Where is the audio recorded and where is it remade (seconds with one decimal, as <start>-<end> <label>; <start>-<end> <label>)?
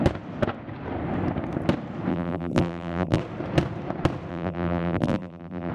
0.0-2.1 recorded; 2.1-3.2 remade; 3.2-4.3 recorded; 4.3-5.7 remade